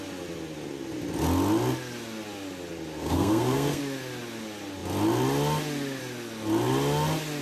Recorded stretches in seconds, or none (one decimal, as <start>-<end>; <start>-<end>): 0.0-3.0; 3.8-7.4